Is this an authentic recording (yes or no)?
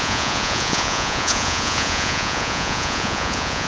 no